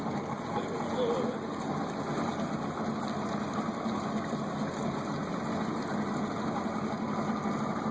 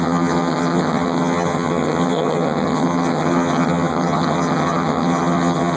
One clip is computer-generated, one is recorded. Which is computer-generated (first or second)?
second